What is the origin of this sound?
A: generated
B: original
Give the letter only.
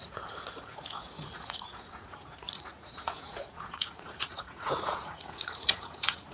A